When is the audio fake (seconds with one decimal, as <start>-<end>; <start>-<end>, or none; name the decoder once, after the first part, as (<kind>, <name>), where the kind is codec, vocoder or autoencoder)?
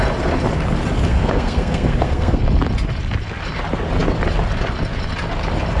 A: 1.1-2.4 (codec, SNAC)